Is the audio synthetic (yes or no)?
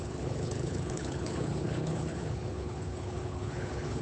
yes